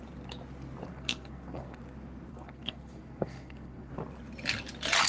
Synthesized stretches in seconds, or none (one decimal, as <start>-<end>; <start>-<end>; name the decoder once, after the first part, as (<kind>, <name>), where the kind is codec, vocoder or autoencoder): 0.9-1.8 (codec, SNAC); 2.3-3.9